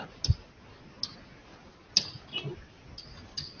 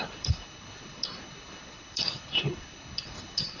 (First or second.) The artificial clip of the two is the second